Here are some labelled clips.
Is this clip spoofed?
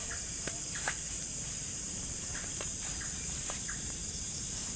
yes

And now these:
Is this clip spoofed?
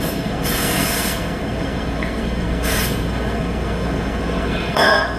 yes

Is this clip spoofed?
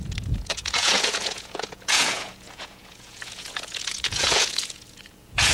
yes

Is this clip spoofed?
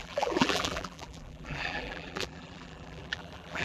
yes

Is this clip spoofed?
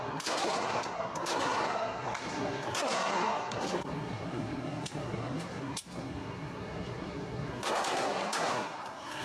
yes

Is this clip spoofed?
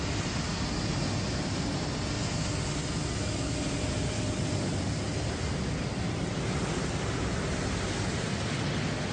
no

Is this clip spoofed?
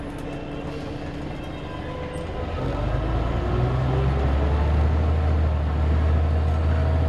no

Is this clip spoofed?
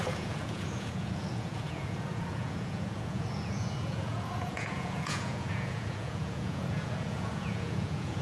yes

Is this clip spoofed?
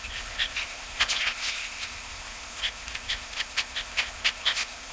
yes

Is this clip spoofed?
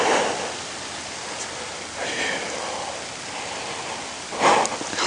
no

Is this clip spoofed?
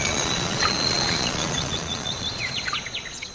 yes